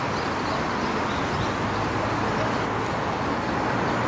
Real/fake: real